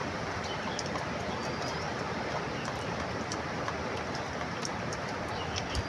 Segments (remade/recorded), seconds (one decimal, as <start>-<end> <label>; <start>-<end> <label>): 0.0-3.5 remade; 3.5-5.9 recorded